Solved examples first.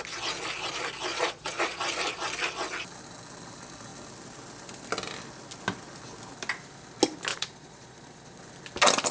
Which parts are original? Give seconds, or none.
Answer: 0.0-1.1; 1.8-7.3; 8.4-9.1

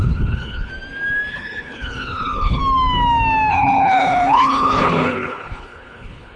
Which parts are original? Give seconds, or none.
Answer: 0.7-1.3; 2.6-3.5

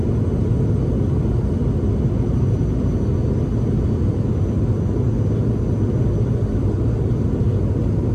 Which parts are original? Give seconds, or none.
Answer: 0.0-8.1

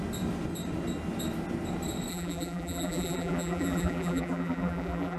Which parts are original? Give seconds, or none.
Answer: 0.0-2.1

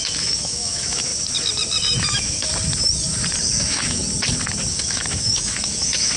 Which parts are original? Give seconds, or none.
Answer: 1.1-1.8; 2.5-3.6; 4.0-4.7

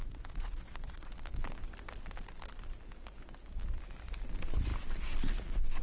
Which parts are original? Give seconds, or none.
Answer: 1.1-5.8

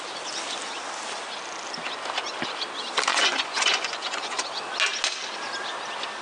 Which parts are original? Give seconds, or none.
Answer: 0.0-3.1; 4.6-6.2